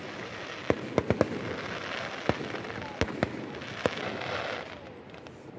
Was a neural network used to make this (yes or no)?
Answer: no